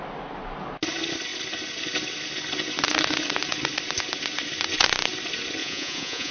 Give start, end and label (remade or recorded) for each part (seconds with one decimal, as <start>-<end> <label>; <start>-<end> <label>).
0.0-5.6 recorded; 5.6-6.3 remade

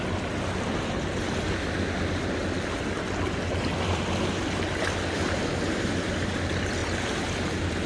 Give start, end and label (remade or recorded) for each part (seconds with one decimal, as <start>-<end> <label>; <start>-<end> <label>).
0.0-7.9 recorded

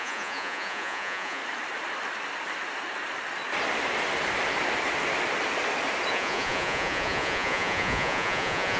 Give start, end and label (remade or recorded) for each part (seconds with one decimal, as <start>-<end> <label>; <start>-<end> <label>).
0.0-1.4 remade; 1.4-6.1 recorded; 6.1-8.8 remade